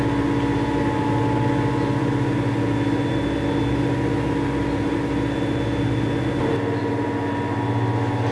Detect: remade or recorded recorded